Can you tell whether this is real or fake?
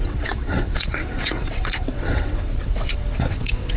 fake